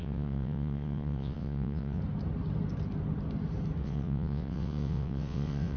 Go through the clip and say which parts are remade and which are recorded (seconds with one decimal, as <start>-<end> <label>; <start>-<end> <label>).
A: 0.0-2.0 remade; 2.0-3.8 recorded; 3.8-5.8 remade